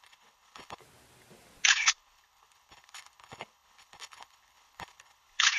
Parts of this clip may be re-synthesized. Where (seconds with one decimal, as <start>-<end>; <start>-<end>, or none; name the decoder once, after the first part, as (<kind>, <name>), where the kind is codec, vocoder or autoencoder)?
0.0-0.8 (codec, HILCodec); 1.7-5.6